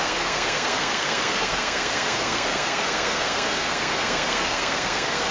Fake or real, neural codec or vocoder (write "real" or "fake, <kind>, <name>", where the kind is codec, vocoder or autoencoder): fake, codec, SNAC